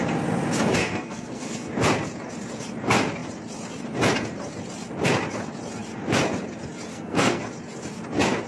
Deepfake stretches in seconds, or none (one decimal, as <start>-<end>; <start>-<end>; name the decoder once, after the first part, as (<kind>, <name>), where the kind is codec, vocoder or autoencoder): 0.8-1.7 (codec, SNAC); 6.9-7.4